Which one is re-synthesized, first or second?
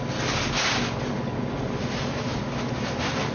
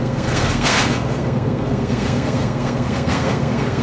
second